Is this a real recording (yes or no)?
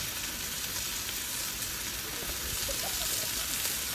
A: yes